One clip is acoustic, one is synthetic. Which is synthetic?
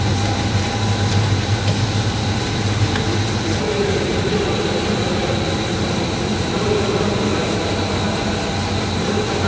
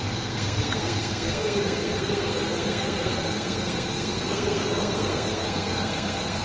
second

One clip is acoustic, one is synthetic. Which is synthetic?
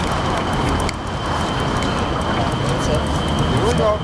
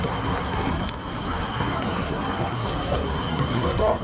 second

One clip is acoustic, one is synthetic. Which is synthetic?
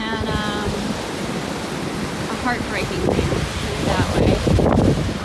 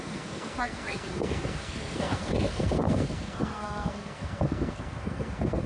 second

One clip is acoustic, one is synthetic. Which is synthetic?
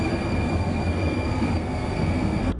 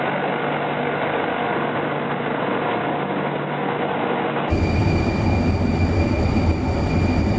first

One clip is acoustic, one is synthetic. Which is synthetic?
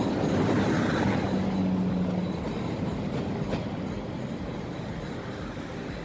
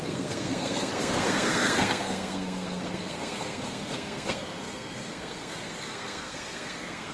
second